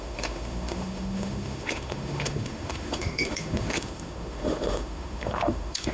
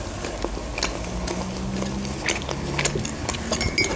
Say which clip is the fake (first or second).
first